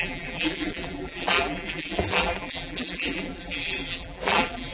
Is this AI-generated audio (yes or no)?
yes